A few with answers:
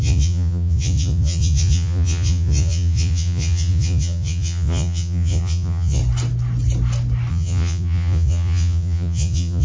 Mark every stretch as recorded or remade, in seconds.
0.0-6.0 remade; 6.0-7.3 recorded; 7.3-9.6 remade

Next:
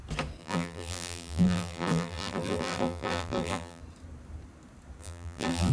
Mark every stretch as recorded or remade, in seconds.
0.0-0.4 recorded; 0.4-3.8 remade; 3.8-5.0 recorded; 5.0-5.7 remade

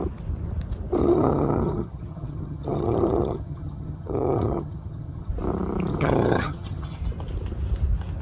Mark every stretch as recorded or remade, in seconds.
0.0-1.0 recorded; 1.0-5.3 remade; 5.3-5.9 recorded; 5.9-7.0 remade; 7.0-8.2 recorded

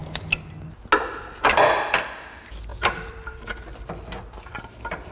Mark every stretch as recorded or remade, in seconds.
0.0-2.7 recorded; 2.7-3.9 remade; 3.9-5.1 recorded

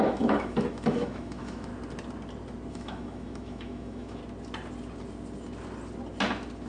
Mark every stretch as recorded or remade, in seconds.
0.0-1.7 remade; 1.7-2.7 recorded; 2.7-4.2 remade; 4.2-6.7 recorded

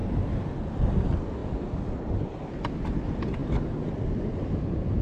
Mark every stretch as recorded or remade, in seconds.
0.0-5.0 recorded